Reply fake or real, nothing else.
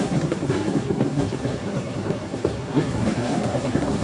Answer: fake